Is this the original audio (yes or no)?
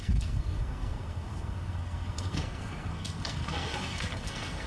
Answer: no